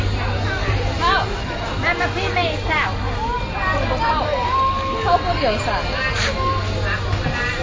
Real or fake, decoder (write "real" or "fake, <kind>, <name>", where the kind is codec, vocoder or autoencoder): real